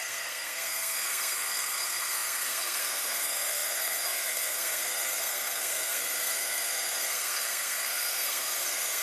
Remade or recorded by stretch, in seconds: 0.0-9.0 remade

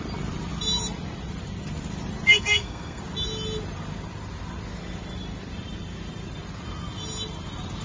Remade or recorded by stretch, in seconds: 0.0-2.3 recorded; 2.3-3.0 remade; 3.0-7.8 recorded

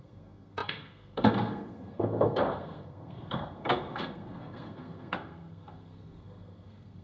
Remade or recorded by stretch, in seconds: 0.0-7.0 remade

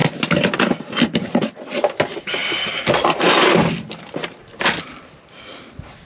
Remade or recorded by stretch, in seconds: 0.0-6.0 recorded